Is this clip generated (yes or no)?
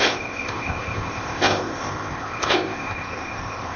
yes